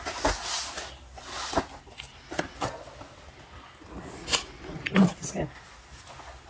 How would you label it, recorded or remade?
recorded